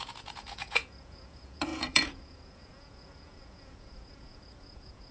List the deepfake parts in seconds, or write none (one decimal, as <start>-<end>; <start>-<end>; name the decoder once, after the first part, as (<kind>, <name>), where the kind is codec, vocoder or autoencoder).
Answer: 0.0-5.1 (vocoder, Vocos)